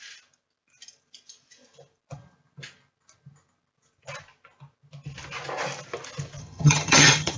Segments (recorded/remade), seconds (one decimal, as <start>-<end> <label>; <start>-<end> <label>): 0.0-6.4 recorded; 6.4-7.4 remade